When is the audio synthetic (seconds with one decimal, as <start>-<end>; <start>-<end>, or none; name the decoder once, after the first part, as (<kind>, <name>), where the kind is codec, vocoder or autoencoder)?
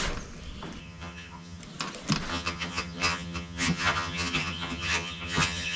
0.8-1.6 (vocoder, HiFi-GAN); 2.3-5.8